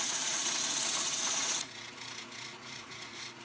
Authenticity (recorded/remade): remade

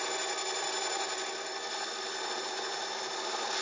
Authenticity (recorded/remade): recorded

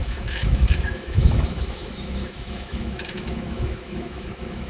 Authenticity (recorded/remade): remade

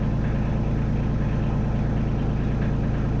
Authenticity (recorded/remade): recorded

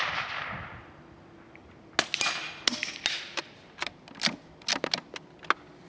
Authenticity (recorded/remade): recorded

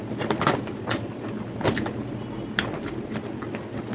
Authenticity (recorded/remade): recorded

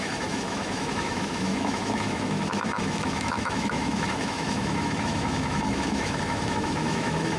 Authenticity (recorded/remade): remade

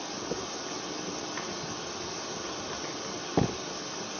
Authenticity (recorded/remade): recorded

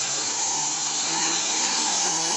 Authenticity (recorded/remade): remade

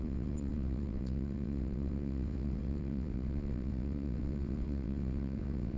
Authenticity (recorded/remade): remade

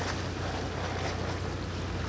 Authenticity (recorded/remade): recorded